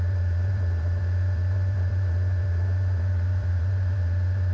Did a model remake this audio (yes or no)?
yes